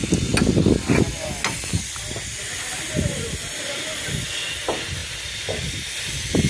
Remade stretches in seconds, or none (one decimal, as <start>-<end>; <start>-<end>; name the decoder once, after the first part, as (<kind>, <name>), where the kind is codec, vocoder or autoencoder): none

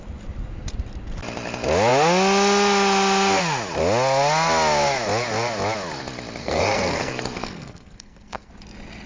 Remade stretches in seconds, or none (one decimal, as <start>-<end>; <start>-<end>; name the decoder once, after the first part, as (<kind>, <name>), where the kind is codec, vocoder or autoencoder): 6.4-8.5 (codec, SNAC)

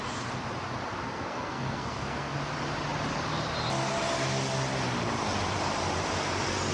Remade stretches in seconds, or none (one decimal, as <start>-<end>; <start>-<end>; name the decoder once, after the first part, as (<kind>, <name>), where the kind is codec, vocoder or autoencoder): 1.0-2.3 (codec, SNAC)

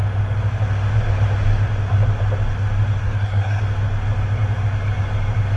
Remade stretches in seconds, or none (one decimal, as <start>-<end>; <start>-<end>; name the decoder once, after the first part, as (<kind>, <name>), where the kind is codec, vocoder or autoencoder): 3.0-3.6 (codec, SNAC)

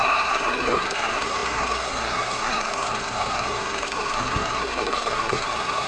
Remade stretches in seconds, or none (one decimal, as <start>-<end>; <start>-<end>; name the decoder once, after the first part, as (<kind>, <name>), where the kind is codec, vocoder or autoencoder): 0.0-5.9 (codec, SNAC)

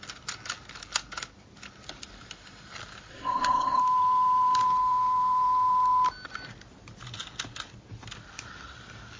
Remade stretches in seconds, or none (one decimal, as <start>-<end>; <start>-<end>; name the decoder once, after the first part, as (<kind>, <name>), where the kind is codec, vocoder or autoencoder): 3.1-3.8 (codec, SNAC)